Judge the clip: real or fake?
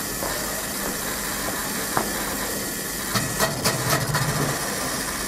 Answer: fake